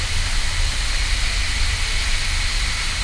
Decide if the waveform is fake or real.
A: real